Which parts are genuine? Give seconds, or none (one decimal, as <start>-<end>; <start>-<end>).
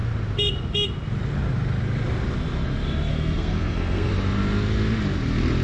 0.0-3.1; 4.1-5.6